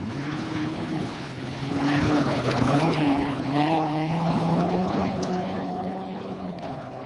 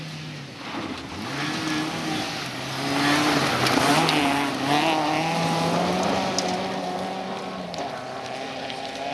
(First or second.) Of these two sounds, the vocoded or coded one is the first